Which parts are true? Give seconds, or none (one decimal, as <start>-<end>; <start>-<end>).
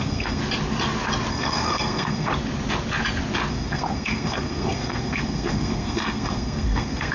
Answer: 0.4-1.3; 2.3-3.5